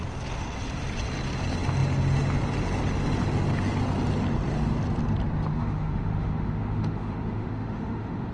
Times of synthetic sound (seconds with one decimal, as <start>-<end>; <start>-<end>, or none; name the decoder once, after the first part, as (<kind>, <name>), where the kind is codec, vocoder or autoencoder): 5.5-8.3 (autoencoder, DAC-VAE)